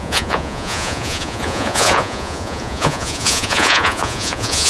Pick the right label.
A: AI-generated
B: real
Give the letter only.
A